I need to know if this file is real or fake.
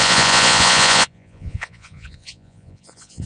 fake